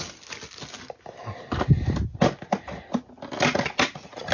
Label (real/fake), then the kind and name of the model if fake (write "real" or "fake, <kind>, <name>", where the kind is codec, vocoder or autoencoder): real